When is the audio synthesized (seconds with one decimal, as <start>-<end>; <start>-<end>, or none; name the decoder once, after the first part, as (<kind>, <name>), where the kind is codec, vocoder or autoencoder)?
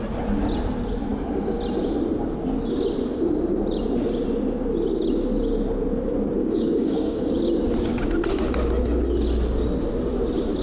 6.4-7.3 (codec, DAC)